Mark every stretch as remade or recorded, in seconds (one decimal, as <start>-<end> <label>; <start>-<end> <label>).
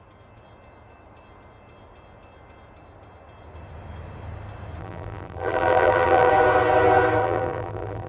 0.0-4.8 recorded; 4.8-6.3 remade; 6.3-7.2 recorded; 7.2-8.1 remade